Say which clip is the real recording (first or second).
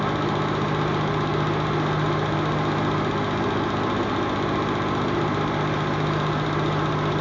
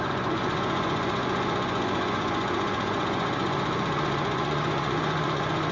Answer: first